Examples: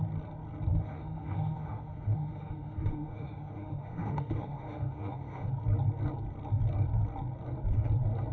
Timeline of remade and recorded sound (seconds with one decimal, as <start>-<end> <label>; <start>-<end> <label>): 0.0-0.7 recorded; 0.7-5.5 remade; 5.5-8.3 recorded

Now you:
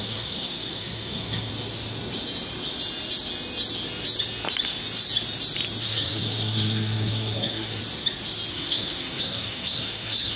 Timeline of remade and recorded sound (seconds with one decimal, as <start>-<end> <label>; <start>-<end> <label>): 0.0-1.5 remade; 1.5-5.8 recorded; 5.8-7.8 remade; 7.8-8.5 recorded; 8.5-10.4 remade

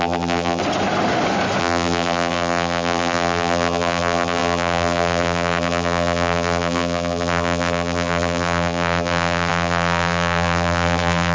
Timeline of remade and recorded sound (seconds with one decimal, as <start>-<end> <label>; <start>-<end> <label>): 0.0-0.6 remade; 0.6-1.6 recorded; 1.6-11.3 remade

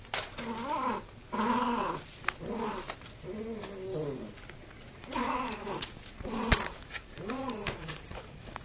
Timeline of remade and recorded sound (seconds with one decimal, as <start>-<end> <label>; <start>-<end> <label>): 0.0-4.6 recorded; 4.6-8.6 remade

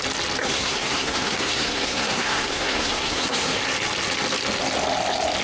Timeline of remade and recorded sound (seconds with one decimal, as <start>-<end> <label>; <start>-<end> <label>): 0.0-0.4 recorded; 0.4-3.6 remade; 3.6-5.4 recorded

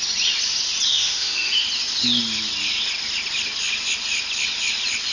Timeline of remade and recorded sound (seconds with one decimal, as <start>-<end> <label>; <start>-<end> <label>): 0.0-0.9 recorded; 0.9-1.5 remade; 1.5-5.1 recorded